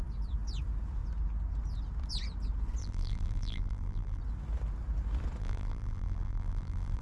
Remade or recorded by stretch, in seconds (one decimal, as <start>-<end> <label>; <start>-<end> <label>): 0.0-2.8 recorded; 2.8-4.2 remade; 4.2-5.4 recorded; 5.4-7.0 remade